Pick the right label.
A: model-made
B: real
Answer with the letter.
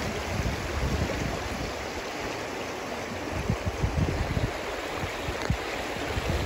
B